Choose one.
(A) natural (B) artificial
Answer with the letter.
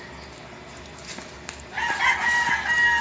A